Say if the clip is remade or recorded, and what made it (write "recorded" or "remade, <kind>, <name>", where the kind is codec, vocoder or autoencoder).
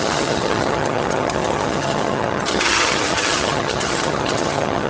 remade, vocoder, HiFi-GAN